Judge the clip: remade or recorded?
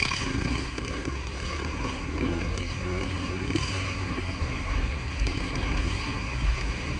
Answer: remade